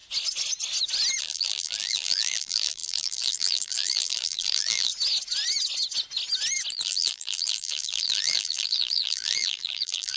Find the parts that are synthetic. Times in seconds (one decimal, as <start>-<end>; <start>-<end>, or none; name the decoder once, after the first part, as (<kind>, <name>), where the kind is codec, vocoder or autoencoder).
1.2-4.9 (vocoder, BigVGAN v2); 6.7-10.2